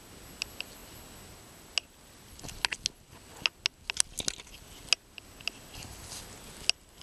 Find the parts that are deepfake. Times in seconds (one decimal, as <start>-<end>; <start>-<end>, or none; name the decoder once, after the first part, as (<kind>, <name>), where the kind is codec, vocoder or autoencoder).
none